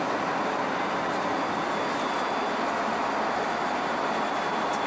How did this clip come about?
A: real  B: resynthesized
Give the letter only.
A